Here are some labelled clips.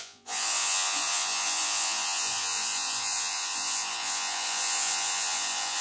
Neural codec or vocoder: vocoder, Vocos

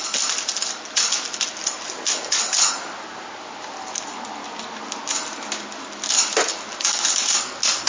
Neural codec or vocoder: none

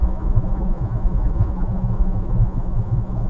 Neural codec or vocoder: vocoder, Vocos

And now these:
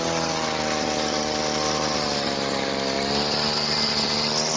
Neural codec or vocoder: none